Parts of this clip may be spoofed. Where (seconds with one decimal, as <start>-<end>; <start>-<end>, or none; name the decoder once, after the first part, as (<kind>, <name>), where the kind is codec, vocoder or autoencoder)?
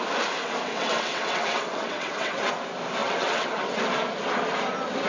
0.7-2.5 (vocoder, WaveNeXt); 3.0-3.8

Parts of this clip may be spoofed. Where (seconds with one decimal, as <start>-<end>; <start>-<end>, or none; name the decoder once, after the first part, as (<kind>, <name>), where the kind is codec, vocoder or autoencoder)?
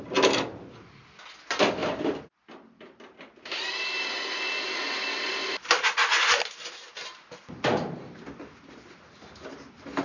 none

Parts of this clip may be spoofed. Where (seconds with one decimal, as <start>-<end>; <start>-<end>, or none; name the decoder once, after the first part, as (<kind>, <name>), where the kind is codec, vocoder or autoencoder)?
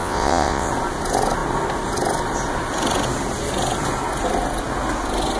0.0-0.7 (vocoder, WaveNeXt)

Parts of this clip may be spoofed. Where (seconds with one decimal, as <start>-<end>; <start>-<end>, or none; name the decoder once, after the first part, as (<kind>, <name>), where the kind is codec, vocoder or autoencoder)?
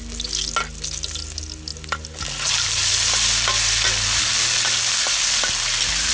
none